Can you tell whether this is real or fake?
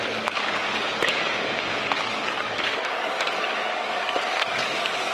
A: fake